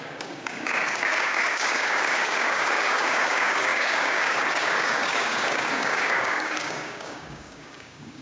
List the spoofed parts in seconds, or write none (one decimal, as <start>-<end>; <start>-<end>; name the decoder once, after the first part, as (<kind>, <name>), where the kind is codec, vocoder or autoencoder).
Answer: 0.0-8.2 (codec, DAC)